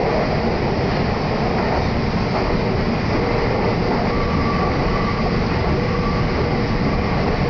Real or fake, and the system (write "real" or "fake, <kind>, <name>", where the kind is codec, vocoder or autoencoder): real